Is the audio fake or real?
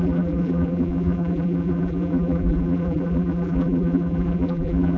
fake